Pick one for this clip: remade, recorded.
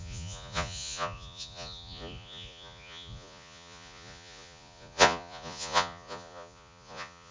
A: remade